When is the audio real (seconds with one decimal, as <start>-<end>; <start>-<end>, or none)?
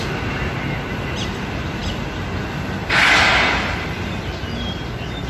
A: 0.0-5.3